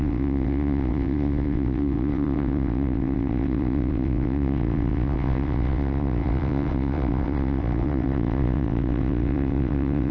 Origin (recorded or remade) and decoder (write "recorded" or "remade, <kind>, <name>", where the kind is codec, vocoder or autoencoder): remade, vocoder, WaveNeXt